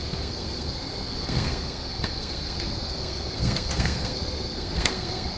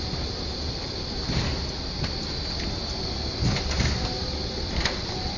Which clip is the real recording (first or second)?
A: second